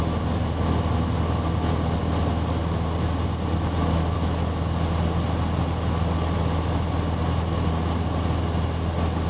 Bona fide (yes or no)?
yes